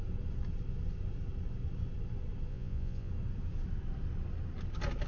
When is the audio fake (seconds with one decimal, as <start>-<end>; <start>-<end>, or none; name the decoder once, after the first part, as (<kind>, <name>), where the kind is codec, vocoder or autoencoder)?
2.5-3.1 (vocoder, Vocos)

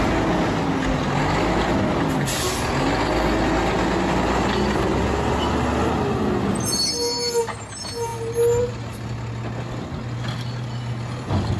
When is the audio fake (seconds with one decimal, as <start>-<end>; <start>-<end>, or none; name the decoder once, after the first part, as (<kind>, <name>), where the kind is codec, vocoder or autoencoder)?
none